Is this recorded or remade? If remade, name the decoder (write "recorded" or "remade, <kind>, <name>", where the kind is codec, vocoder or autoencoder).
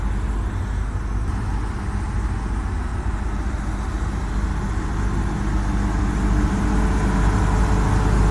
recorded